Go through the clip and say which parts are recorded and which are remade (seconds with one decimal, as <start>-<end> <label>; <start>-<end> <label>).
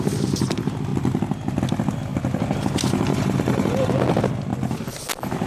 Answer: 0.0-3.1 recorded; 3.1-3.9 remade; 3.9-5.5 recorded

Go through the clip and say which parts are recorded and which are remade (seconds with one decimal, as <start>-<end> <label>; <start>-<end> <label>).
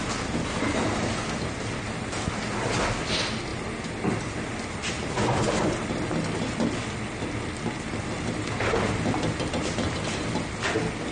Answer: 0.0-11.1 recorded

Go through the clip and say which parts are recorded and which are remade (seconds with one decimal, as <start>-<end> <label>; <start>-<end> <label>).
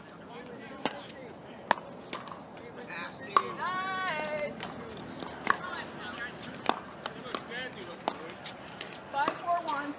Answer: 0.0-10.0 recorded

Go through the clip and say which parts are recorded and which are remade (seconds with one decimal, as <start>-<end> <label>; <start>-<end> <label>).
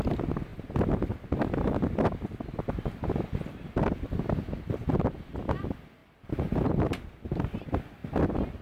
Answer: 0.0-6.0 recorded; 6.0-7.6 remade; 7.6-8.6 recorded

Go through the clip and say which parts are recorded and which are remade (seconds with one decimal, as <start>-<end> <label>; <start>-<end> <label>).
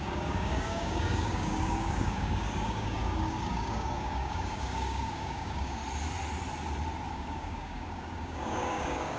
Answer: 0.0-5.8 remade; 5.8-7.1 recorded; 7.1-9.2 remade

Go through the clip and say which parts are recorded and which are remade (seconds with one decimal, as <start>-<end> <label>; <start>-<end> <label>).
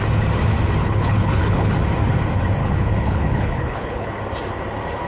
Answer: 0.0-0.8 recorded; 0.8-1.7 remade; 1.7-2.6 recorded; 2.6-4.1 remade; 4.1-5.1 recorded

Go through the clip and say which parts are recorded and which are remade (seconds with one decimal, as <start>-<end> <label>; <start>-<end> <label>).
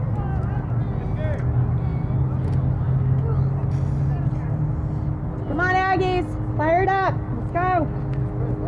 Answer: 0.0-8.7 recorded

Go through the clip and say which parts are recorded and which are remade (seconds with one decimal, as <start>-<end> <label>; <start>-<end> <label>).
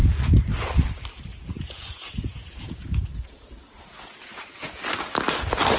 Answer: 0.0-1.3 recorded; 1.3-4.8 remade; 4.8-5.8 recorded